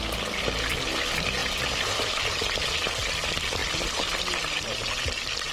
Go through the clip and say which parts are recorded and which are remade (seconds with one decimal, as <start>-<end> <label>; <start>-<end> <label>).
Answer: 0.0-1.4 recorded; 1.4-2.1 remade; 2.1-3.6 recorded; 3.6-4.7 remade; 4.7-5.5 recorded